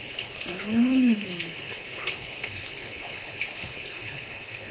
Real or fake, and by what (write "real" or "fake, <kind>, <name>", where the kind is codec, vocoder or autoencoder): fake, codec, HILCodec